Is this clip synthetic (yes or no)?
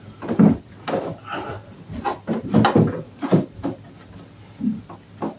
no